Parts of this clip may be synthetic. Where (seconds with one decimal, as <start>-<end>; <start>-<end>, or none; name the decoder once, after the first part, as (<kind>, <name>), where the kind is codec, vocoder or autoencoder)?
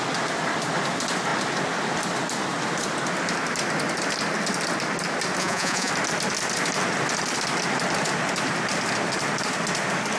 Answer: 5.4-5.9 (vocoder, Vocos)